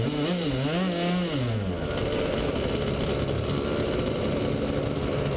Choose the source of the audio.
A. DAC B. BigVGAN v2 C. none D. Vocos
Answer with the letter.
C